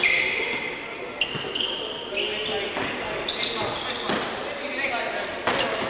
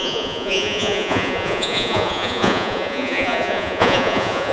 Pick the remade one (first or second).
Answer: second